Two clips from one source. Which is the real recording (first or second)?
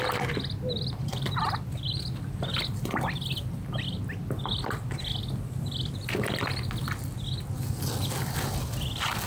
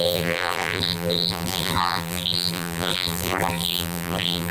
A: first